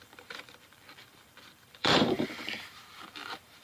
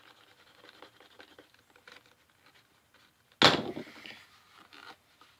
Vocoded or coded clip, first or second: first